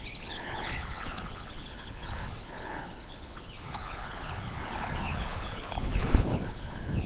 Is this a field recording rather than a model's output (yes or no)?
no